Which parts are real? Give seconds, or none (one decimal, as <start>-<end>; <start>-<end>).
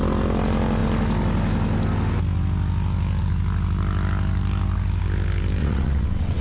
0.0-5.6